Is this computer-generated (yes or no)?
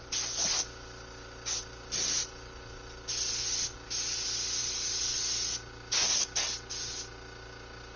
no